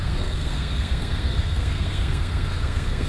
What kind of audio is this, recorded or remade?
remade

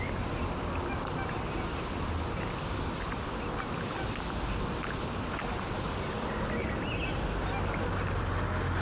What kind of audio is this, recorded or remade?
recorded